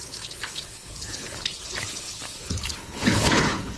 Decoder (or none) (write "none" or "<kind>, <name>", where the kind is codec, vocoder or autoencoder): codec, HILCodec